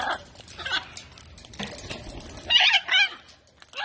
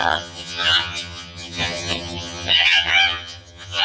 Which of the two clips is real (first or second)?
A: first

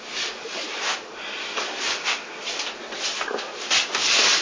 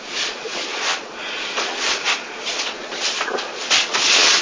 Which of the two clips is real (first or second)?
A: first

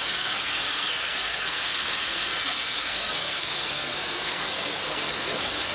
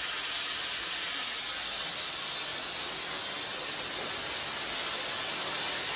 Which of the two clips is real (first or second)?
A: second